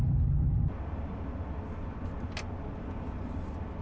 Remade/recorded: recorded